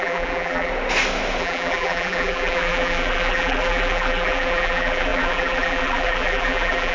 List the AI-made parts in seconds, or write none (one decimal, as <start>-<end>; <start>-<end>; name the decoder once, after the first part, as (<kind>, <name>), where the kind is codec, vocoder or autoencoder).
0.0-0.7 (vocoder, BigVGAN v2); 1.4-6.9